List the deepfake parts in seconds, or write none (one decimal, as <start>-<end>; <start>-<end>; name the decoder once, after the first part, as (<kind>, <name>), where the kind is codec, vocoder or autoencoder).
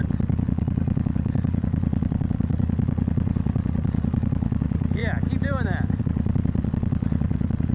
0.0-5.0 (vocoder, Vocos); 6.0-7.7